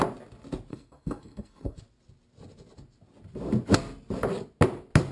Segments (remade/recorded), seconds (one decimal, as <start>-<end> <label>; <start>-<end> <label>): 0.0-0.7 recorded; 0.7-1.8 remade; 1.8-5.1 recorded